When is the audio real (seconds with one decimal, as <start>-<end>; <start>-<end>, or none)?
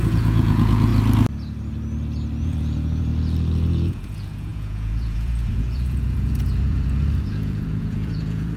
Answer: 0.9-2.4; 3.1-3.7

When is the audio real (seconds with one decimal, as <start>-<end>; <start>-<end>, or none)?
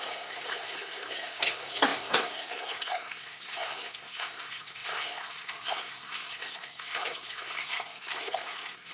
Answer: none